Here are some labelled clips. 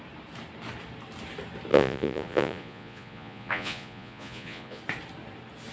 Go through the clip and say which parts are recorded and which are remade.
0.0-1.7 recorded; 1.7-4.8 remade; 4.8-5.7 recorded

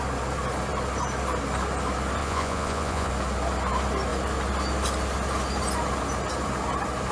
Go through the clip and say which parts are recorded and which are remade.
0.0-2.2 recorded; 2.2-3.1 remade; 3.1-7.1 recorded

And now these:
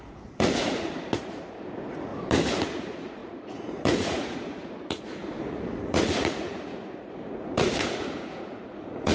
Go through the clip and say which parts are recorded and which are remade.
0.0-2.1 remade; 2.1-2.6 recorded; 2.6-9.1 remade

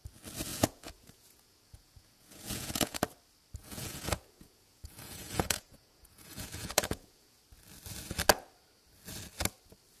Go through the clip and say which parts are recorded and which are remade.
0.0-0.5 recorded; 0.5-3.0 remade; 3.0-3.6 recorded; 3.6-7.4 remade; 7.4-10.0 recorded

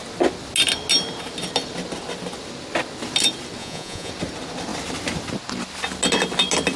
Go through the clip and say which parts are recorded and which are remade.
0.0-3.6 recorded; 3.6-4.1 remade; 4.1-6.8 recorded